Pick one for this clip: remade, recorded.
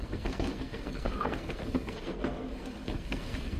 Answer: remade